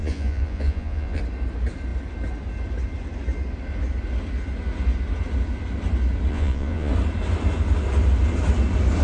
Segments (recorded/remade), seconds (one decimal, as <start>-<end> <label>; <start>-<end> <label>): 0.0-1.2 remade; 1.2-6.3 recorded; 6.3-6.9 remade; 6.9-9.0 recorded